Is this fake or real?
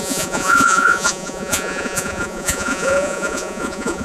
fake